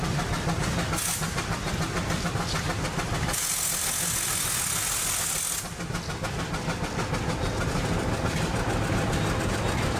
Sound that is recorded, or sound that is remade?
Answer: recorded